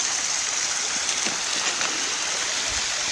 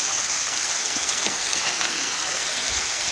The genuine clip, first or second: first